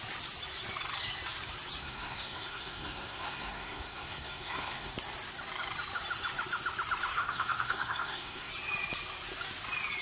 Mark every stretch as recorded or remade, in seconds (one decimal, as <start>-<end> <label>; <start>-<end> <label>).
0.0-1.8 recorded; 1.8-4.9 remade; 4.9-7.1 recorded; 7.1-8.5 remade; 8.5-10.0 recorded